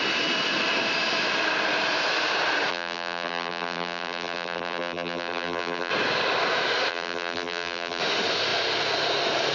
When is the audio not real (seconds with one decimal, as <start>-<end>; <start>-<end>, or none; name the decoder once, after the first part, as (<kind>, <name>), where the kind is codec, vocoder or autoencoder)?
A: 2.7-5.9 (vocoder, BigVGAN v2); 6.9-8.0